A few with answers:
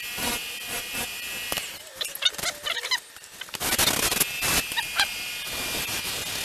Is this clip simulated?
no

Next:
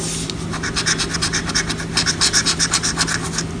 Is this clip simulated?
no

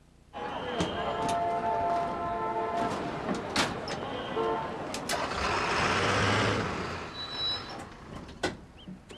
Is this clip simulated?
no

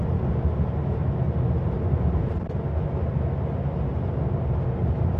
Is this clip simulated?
no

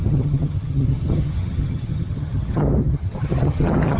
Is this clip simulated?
yes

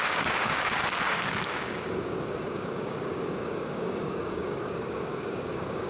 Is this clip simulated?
yes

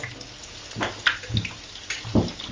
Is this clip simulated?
no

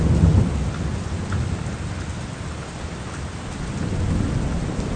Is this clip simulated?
no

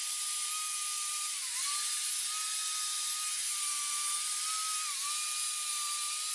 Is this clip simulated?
no